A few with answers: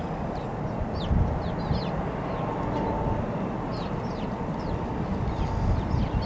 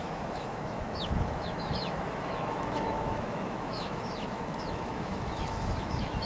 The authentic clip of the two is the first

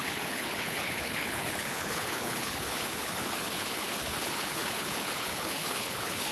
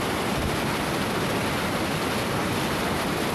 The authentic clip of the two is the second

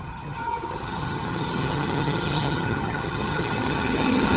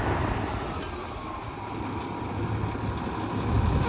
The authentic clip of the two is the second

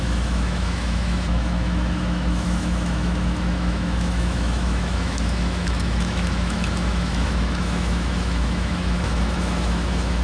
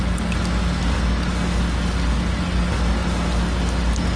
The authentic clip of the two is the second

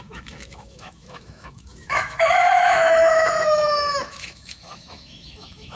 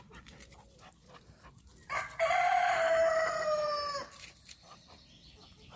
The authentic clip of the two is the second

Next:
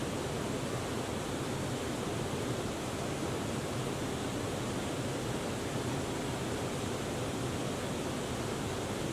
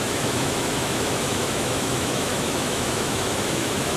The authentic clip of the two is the first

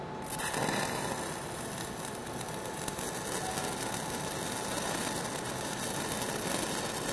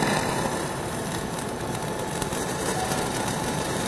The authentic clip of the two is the first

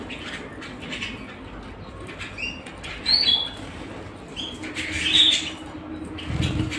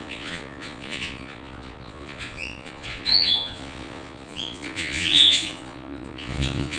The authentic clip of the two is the first